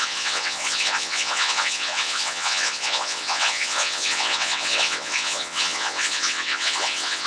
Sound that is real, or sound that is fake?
fake